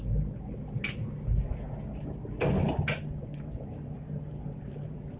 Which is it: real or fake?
real